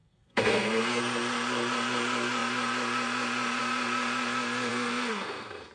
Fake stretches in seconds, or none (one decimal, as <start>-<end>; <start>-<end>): 0.0-1.0; 4.7-5.7